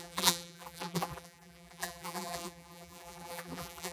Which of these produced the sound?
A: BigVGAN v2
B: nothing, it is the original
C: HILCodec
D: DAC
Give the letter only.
A